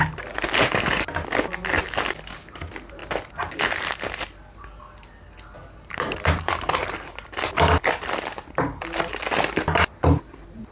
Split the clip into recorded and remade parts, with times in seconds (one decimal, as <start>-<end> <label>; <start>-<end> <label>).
0.0-10.7 recorded